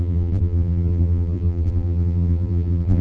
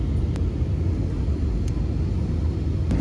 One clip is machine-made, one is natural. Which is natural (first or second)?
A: second